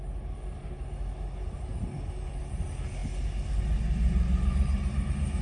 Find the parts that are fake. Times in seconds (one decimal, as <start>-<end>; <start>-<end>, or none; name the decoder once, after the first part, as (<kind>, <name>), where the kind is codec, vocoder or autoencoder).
none

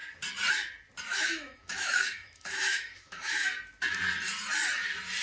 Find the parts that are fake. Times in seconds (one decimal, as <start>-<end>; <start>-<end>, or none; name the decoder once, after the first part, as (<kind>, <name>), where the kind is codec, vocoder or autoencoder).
1.1-3.5 (autoencoder, DAC-VAE)

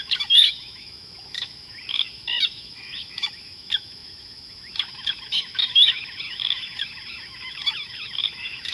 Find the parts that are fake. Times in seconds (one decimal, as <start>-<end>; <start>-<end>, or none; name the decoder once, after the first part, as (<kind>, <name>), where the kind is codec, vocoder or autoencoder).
0.0-8.7 (autoencoder, DAC-VAE)

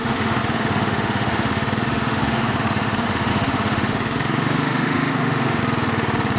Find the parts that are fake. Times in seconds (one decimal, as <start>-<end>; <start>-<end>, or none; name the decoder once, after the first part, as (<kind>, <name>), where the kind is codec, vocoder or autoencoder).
0.0-5.6 (autoencoder, DAC-VAE)

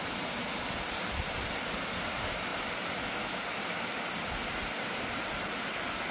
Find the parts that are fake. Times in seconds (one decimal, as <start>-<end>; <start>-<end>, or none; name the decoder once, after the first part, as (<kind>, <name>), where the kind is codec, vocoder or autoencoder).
none

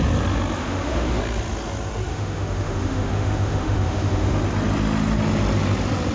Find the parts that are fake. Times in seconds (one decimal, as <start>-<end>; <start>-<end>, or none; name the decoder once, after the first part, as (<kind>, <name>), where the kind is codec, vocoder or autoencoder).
0.6-1.2 (autoencoder, DAC-VAE); 2.1-4.4